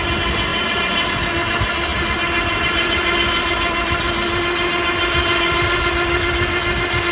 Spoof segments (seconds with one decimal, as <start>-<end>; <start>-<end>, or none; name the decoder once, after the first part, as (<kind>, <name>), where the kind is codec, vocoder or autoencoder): 0.5-1.1 (vocoder, BigVGAN v2)